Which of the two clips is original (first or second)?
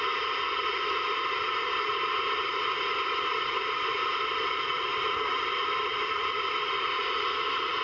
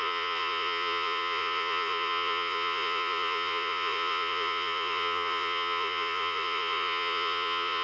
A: first